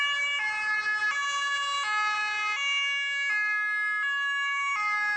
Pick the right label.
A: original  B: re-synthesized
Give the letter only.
A